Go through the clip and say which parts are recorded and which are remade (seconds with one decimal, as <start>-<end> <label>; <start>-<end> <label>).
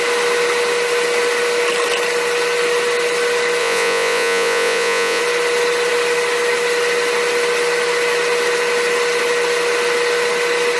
0.0-3.6 recorded; 3.6-5.2 remade; 5.2-10.8 recorded